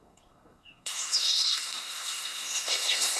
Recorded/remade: remade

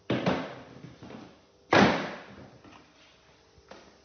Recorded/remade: recorded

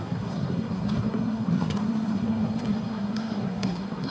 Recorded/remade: remade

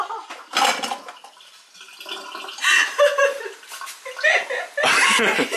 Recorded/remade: recorded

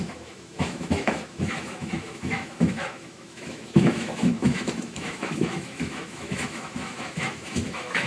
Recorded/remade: remade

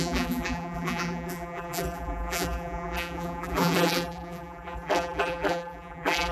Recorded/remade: remade